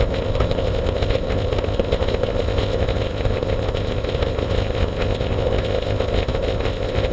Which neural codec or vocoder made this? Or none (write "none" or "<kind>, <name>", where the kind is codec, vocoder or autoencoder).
codec, ZipCodec